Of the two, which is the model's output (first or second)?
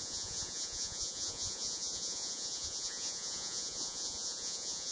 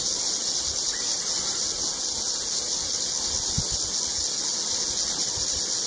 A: first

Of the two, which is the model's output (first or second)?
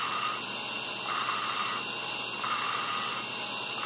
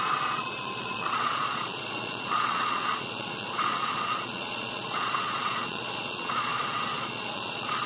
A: second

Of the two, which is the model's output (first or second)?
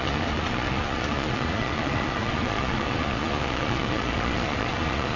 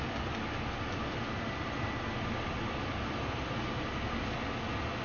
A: first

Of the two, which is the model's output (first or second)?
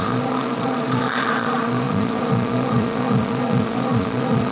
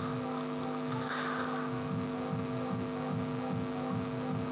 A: first